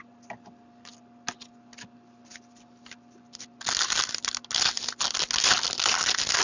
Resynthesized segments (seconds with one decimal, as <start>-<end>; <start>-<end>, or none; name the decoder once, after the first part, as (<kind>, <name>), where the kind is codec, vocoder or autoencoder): none